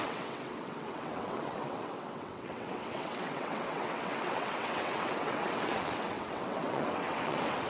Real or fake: fake